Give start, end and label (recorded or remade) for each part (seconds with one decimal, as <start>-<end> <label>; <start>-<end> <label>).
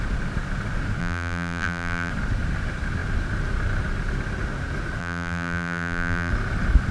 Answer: 0.0-1.0 recorded; 1.0-2.1 remade; 2.1-5.0 recorded; 5.0-6.3 remade; 6.3-6.9 recorded